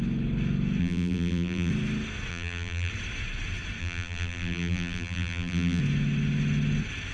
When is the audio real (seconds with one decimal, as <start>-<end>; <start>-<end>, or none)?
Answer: 0.0-0.8; 1.7-2.3; 2.9-3.8; 5.8-7.1